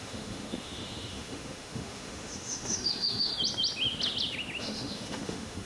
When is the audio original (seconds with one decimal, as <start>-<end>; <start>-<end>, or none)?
3.3-4.6